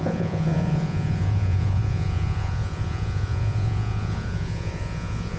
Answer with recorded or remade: remade